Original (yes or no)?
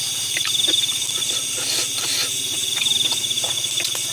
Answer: yes